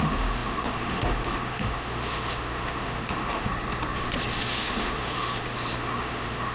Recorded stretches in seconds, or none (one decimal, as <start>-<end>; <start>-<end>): 3.5-4.4